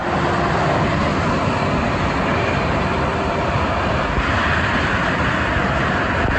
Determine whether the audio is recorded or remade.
recorded